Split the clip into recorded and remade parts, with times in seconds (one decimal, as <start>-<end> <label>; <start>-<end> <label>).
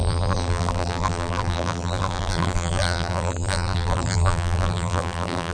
0.0-5.5 remade